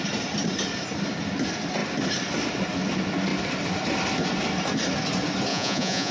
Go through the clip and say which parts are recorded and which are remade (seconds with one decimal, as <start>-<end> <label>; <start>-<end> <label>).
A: 0.0-5.5 recorded; 5.5-6.1 remade